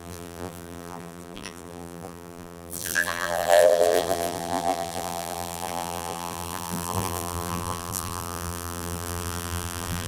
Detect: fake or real fake